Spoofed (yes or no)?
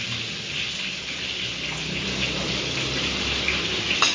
no